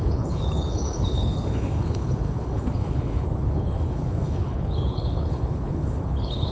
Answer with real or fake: fake